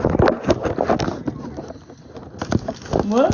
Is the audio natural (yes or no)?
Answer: yes